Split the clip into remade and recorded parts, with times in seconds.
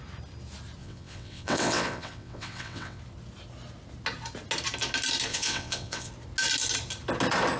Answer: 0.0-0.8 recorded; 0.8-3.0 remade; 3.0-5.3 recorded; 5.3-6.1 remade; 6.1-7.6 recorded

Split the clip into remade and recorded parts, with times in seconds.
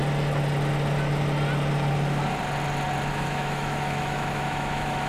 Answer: 0.0-3.1 recorded; 3.1-5.1 remade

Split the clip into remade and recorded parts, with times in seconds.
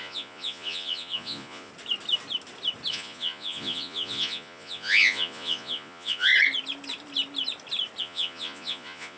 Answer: 0.0-1.7 remade; 1.7-2.9 recorded; 2.9-6.3 remade; 6.3-8.0 recorded; 8.0-9.2 remade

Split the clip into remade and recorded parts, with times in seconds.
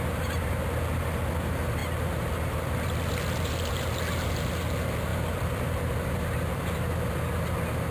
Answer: 0.0-5.1 recorded; 5.1-6.9 remade; 6.9-7.9 recorded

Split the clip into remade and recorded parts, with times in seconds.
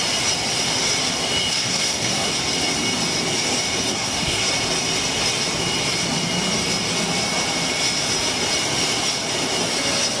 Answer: 0.0-1.5 recorded; 1.5-2.3 remade; 2.3-3.9 recorded; 3.9-4.5 remade; 4.5-10.2 recorded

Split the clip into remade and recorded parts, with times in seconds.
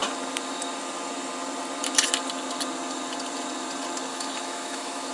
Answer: 0.0-4.1 recorded; 4.1-5.1 remade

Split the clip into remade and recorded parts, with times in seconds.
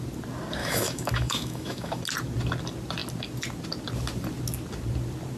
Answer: 0.0-0.6 recorded; 0.6-2.0 remade; 2.0-5.4 recorded